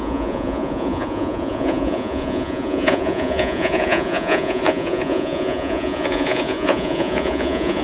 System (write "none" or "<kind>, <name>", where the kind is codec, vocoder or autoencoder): vocoder, Vocos